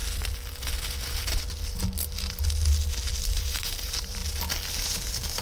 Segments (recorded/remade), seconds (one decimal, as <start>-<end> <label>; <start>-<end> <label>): 0.0-3.2 recorded; 3.2-4.2 remade; 4.2-4.7 recorded; 4.7-5.4 remade